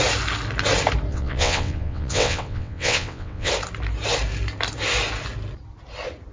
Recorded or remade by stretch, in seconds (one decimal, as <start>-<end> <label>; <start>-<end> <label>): 0.0-1.1 recorded; 1.1-3.5 remade; 3.5-6.3 recorded